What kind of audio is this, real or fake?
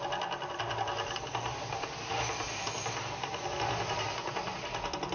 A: real